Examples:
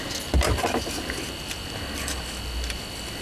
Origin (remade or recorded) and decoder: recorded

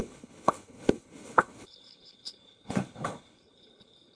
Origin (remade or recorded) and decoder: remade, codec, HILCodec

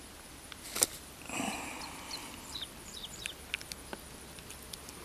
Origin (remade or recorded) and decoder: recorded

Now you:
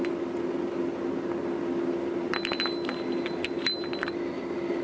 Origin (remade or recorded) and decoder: recorded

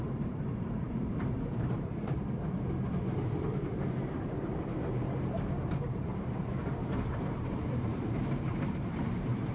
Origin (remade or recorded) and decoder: remade, vocoder, BigVGAN v2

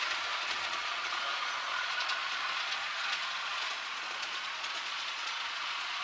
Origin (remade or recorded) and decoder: remade, vocoder, Vocos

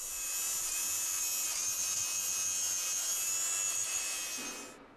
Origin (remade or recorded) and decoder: recorded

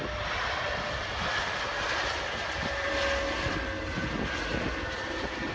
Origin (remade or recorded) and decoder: recorded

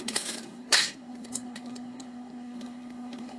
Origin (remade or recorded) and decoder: remade, codec, SNAC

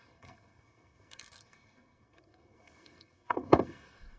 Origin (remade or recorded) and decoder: remade, codec, SNAC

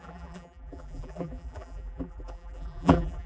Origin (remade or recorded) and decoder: remade, vocoder, BigVGAN v2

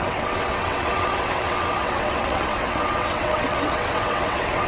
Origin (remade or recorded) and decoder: remade, vocoder, WaveNeXt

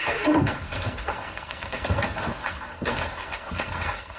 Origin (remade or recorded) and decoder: remade, codec, SNAC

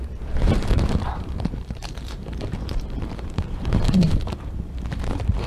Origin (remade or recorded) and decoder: remade, vocoder, BigVGAN v2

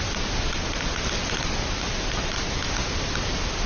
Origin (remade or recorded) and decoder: recorded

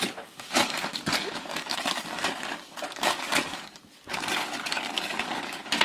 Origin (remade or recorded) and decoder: remade, codec, DAC